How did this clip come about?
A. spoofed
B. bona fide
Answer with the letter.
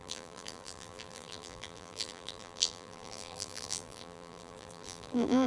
A